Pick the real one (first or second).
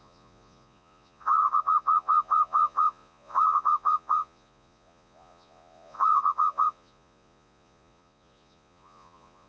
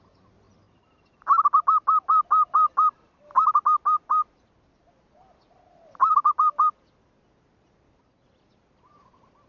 second